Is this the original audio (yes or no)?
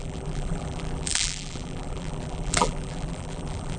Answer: no